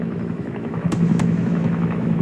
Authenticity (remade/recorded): remade